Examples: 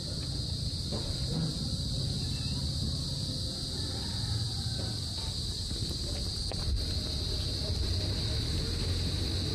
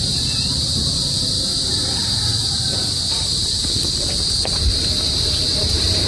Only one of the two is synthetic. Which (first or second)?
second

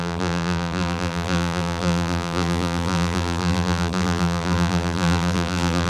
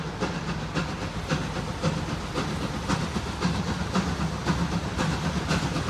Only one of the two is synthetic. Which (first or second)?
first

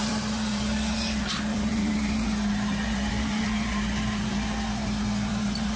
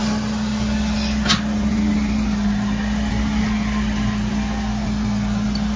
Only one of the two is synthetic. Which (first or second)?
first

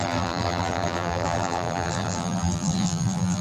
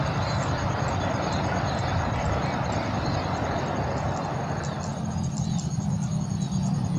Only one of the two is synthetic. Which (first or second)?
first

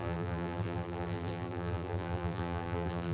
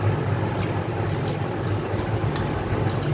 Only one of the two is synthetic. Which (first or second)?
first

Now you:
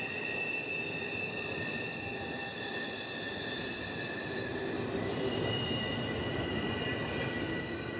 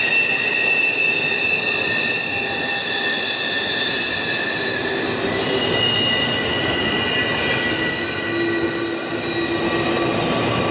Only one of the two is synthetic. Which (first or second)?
first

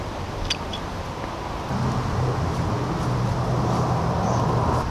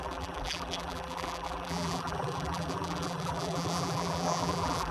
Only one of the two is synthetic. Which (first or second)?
second